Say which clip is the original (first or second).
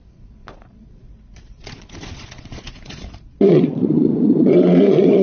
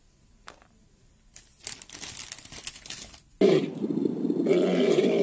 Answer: second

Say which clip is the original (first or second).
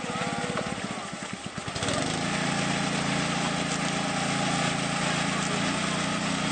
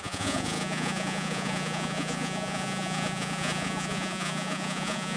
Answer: first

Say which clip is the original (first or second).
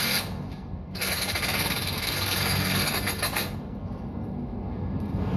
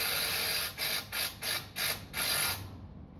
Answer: second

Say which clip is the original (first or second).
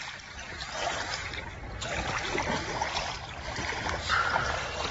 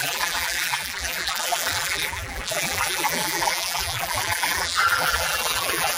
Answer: first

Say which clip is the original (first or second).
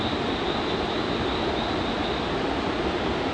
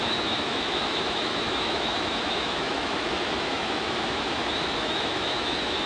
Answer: first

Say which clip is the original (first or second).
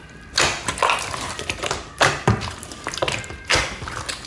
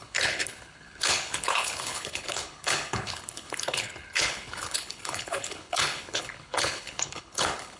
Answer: first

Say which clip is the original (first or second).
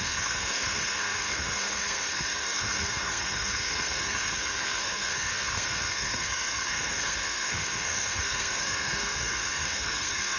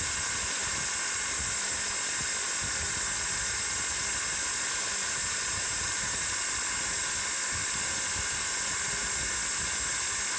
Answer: second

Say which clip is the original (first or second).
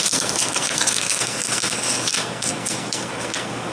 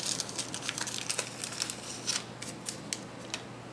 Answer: second